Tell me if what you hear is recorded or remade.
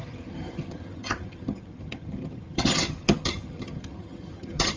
remade